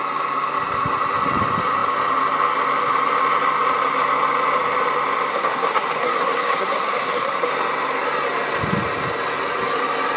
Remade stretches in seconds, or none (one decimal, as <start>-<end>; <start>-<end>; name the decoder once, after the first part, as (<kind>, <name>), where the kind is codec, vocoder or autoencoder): 5.3-7.5 (codec, SNAC)